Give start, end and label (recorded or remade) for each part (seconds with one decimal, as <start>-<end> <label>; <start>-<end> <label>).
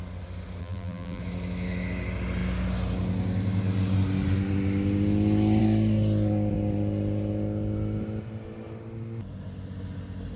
0.0-0.6 recorded; 0.6-1.2 remade; 1.2-10.4 recorded